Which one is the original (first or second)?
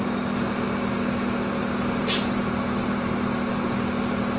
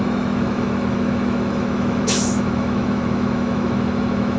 first